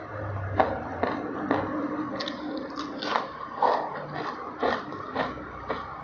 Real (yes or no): yes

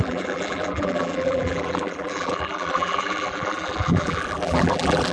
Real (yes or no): no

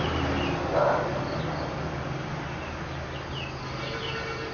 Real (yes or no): yes